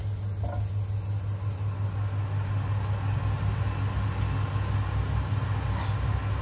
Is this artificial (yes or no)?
no